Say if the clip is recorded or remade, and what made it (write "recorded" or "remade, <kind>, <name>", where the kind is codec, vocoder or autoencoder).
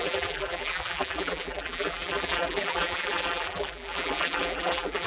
remade, vocoder, BigVGAN v2